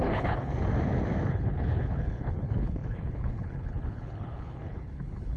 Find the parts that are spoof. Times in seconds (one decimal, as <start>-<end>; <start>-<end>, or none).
0.0-0.5; 1.3-5.4